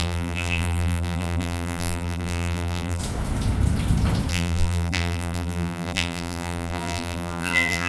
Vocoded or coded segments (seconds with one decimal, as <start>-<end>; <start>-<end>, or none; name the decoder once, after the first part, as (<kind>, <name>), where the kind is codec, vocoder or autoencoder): 0.0-3.0 (vocoder, BigVGAN v2); 4.3-7.9